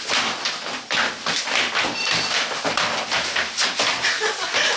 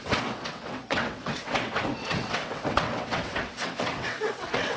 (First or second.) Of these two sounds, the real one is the first